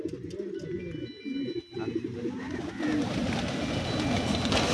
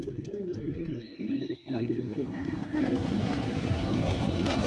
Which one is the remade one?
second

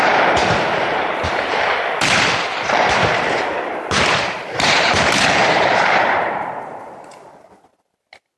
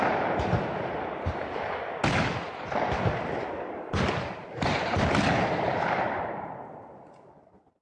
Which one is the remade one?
first